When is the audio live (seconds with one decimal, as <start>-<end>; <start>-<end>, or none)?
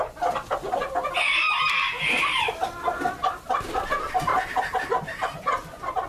0.0-6.1